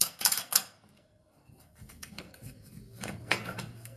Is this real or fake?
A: fake